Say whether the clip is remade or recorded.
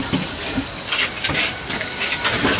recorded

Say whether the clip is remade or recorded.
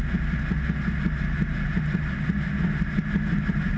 recorded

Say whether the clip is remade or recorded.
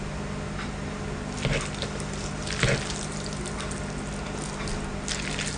recorded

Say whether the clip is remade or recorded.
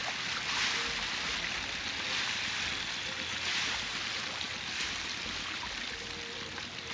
recorded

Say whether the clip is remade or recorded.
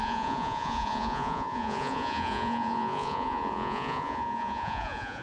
remade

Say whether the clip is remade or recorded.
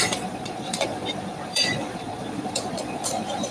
remade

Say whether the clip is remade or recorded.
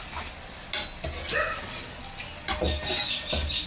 recorded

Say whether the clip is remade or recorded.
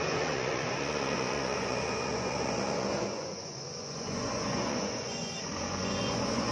remade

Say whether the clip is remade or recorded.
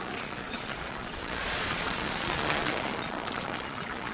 remade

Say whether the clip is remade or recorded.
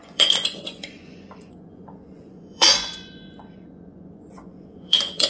remade